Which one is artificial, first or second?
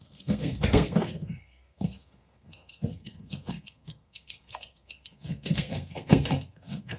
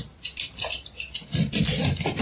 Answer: first